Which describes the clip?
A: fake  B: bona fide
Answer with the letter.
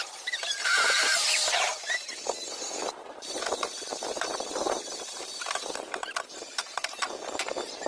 A